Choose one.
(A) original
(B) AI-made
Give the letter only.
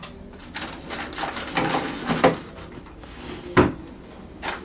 A